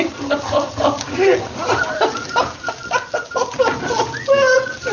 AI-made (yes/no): yes